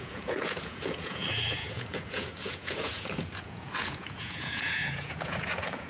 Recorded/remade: remade